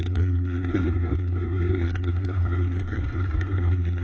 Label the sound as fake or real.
fake